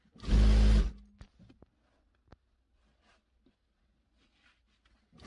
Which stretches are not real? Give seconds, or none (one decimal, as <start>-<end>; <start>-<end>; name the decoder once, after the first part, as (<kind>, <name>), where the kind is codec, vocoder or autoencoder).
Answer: none